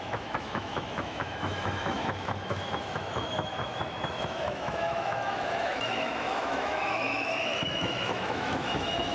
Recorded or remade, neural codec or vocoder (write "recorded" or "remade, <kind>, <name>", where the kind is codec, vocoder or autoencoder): remade, autoencoder, DAC-VAE